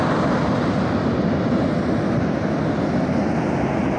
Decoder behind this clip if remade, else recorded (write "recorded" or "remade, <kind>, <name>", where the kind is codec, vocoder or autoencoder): recorded